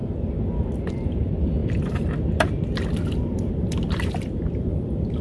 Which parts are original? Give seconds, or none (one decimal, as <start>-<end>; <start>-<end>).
0.0-1.6; 4.7-5.2